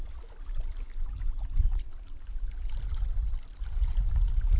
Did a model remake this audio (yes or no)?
no